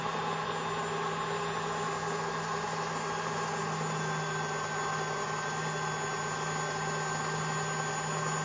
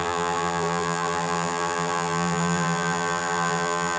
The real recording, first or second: first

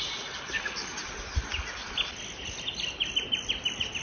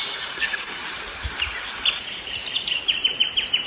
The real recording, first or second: first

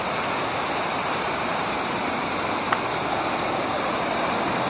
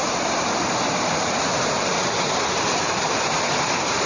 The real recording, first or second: first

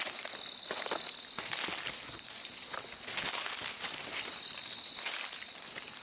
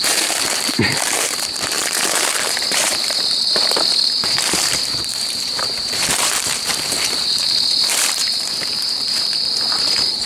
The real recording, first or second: first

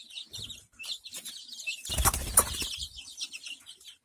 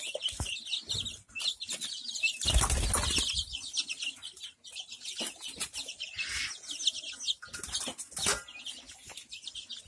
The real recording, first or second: second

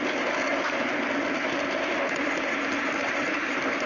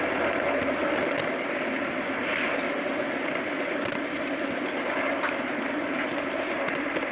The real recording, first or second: first